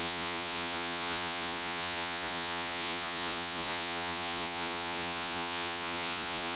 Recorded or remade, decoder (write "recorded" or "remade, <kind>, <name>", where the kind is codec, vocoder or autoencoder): remade, vocoder, Vocos